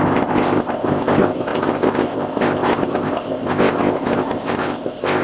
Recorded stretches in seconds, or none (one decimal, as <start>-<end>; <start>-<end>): none